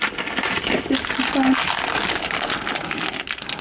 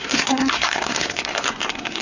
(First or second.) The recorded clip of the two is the first